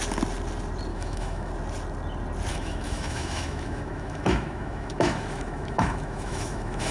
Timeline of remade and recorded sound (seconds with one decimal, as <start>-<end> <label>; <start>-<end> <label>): 0.0-0.9 recorded; 0.9-1.5 remade; 1.5-2.5 recorded; 2.5-6.9 remade